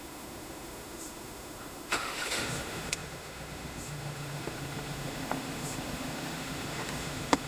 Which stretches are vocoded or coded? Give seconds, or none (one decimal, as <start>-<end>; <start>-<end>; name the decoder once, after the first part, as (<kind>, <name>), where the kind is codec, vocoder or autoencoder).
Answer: 0.0-7.5 (autoencoder, DAC-VAE)